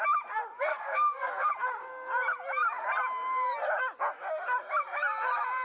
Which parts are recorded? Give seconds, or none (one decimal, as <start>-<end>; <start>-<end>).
0.0-0.7; 1.5-5.6